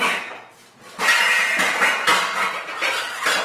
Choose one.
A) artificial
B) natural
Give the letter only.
B